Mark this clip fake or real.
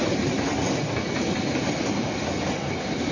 real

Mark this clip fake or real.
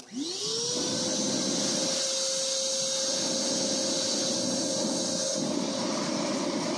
real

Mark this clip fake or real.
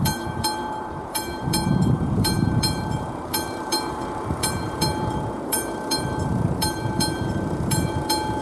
fake